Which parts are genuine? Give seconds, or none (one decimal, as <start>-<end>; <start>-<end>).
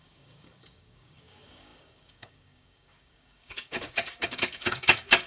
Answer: none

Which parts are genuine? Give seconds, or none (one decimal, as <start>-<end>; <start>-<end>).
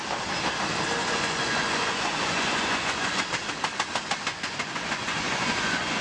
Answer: 0.0-1.0; 3.2-4.3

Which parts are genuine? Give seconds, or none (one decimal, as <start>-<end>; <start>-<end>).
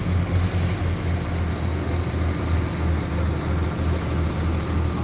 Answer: 0.0-1.5; 2.0-5.0